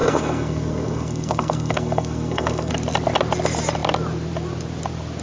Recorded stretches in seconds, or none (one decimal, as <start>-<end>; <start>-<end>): 2.7-5.2